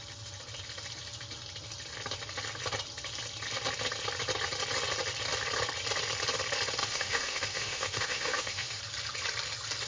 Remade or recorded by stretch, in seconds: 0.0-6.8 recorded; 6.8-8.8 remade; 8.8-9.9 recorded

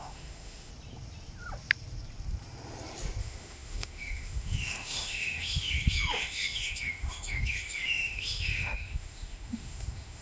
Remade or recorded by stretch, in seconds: 0.0-0.7 remade; 0.7-3.2 recorded; 3.2-10.2 remade

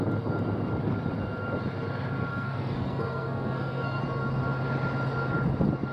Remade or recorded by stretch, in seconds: 0.0-2.3 recorded; 2.3-4.0 remade; 4.0-5.9 recorded

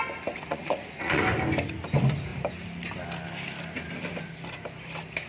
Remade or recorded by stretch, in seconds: 0.0-0.5 recorded; 0.5-1.2 remade; 1.2-5.3 recorded